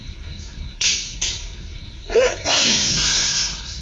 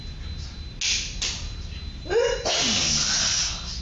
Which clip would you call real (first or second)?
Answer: second